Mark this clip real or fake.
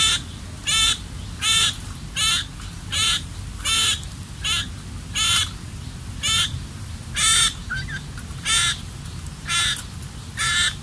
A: real